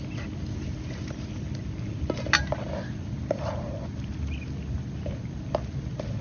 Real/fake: real